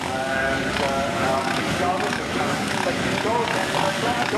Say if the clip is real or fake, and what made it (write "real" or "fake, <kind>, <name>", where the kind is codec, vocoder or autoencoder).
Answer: fake, codec, DAC